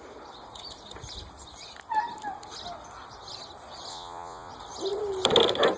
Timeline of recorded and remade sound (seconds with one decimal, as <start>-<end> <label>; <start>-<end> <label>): 0.0-3.9 recorded; 3.9-4.5 remade; 4.5-5.8 recorded